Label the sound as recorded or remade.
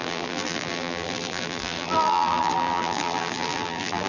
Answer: remade